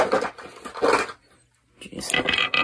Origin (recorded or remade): recorded